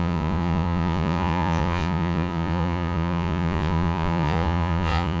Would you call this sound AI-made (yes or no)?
yes